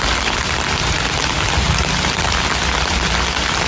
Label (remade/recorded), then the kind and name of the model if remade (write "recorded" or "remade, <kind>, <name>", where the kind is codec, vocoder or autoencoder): recorded